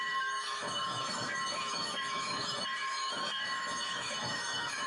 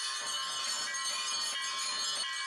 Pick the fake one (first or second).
first